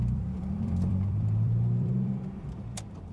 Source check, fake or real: fake